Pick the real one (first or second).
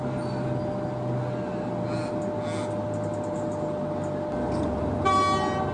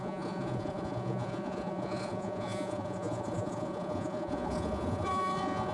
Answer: first